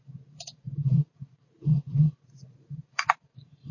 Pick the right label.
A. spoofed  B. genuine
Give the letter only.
A